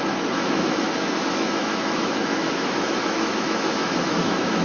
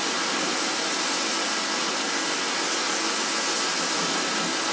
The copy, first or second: first